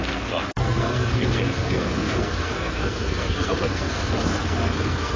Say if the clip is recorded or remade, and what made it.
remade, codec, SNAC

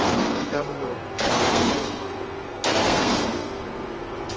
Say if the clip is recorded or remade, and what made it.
remade, codec, SNAC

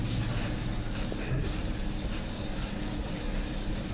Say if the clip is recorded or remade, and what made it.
recorded